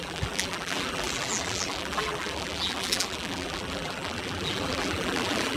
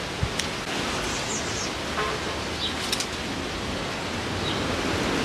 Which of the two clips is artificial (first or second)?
first